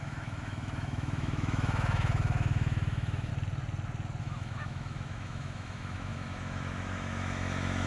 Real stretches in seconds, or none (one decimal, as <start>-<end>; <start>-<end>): 3.3-4.2

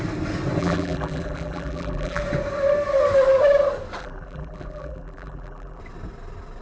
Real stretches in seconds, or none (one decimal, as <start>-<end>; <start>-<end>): 0.0-0.6; 2.2-4.0; 5.8-6.6